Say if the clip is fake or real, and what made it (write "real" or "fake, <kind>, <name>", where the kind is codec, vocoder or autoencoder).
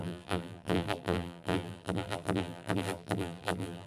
fake, vocoder, BigVGAN v2